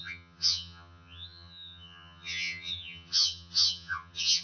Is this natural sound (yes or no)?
no